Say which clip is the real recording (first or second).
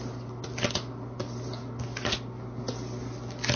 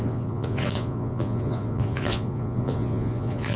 first